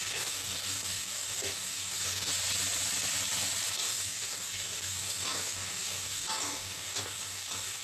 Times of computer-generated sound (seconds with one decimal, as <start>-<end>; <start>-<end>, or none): 0.0-2.3; 3.7-7.8